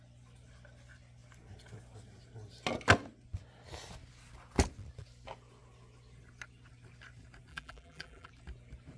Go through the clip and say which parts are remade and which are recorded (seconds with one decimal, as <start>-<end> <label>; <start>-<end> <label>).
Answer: 0.0-7.5 recorded; 7.5-8.3 remade; 8.3-9.0 recorded

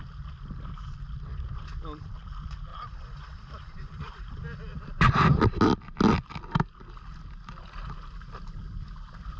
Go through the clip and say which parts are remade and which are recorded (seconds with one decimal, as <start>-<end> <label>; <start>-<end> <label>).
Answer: 0.0-2.7 recorded; 2.7-4.4 remade; 4.4-9.4 recorded

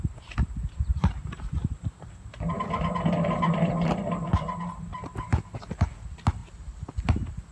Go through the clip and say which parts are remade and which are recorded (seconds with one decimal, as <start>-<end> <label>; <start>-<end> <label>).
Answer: 0.0-0.9 recorded; 0.9-5.4 remade; 5.4-7.5 recorded

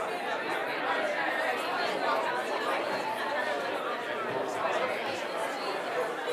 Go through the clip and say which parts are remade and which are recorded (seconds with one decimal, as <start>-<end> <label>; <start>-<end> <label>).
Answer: 0.0-0.6 recorded; 0.6-2.0 remade; 2.0-6.3 recorded

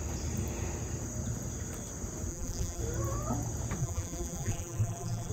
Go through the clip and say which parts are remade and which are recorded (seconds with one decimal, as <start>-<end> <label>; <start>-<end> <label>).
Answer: 0.0-2.3 recorded; 2.3-2.8 remade; 2.8-3.8 recorded; 3.8-5.3 remade

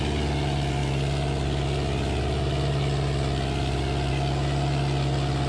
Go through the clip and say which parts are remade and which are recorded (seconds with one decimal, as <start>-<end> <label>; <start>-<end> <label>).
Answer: 0.0-5.5 recorded

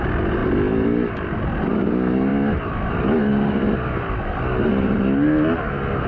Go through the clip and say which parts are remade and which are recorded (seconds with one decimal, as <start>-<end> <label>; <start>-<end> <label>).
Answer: 0.0-6.1 recorded